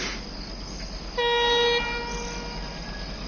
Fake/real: real